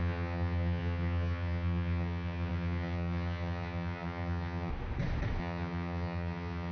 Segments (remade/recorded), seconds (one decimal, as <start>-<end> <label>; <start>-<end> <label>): 0.0-4.7 remade; 4.7-5.4 recorded; 5.4-6.7 remade